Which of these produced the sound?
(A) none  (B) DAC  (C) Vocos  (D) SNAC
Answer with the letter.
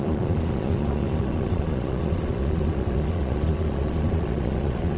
C